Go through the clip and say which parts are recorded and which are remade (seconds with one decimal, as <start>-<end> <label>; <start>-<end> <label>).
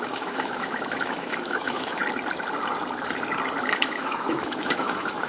0.0-2.0 remade; 2.0-3.6 recorded; 3.6-5.3 remade